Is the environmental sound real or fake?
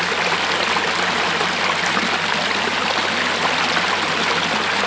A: real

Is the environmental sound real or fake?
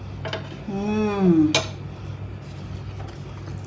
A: real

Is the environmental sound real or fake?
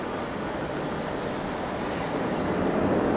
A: real